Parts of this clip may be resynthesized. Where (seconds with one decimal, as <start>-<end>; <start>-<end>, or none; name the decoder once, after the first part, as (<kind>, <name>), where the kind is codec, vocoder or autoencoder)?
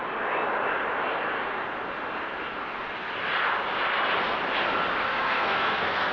5.1-6.1 (codec, SNAC)